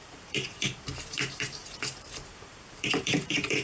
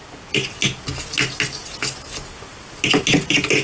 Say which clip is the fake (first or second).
first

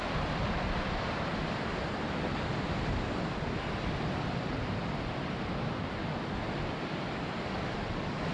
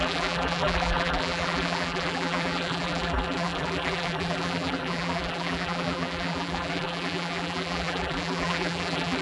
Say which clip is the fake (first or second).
second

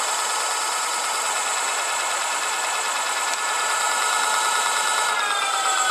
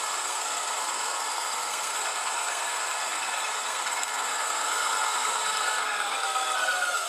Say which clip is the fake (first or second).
second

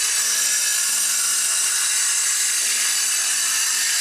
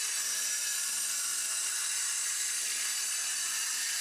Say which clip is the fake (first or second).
second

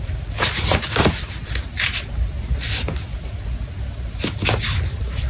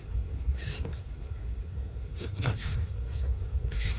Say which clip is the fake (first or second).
second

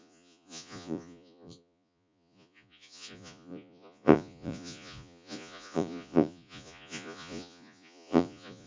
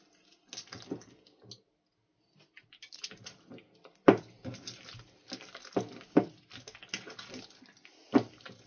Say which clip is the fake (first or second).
first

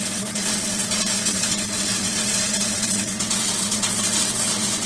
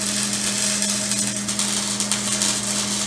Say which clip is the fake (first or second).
first